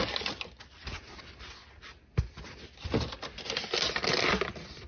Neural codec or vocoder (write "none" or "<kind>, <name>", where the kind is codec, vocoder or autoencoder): none